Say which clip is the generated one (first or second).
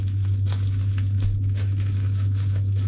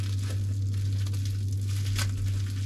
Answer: first